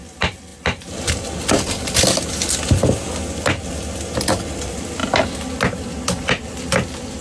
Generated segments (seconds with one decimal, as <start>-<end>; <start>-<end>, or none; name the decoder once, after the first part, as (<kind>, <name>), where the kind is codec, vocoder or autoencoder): none